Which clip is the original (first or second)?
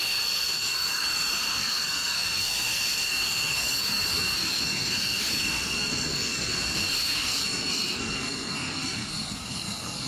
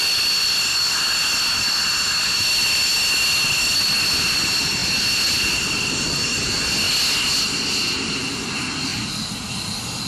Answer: second